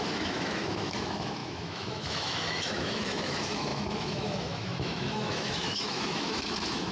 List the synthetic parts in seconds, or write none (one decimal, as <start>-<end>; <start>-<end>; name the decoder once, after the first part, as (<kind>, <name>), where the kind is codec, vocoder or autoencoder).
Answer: 0.0-6.9 (autoencoder, DAC-VAE)